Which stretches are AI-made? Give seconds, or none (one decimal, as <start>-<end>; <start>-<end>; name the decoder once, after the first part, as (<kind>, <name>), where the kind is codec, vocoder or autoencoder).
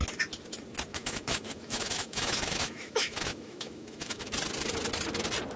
0.9-4.3 (autoencoder, DAC-VAE)